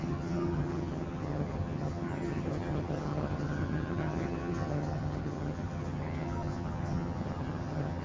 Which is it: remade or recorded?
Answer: remade